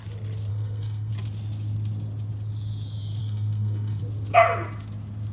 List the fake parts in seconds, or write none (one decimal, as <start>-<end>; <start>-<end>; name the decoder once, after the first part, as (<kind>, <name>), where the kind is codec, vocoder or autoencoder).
0.5-1.1 (codec, SNAC); 3.2-4.0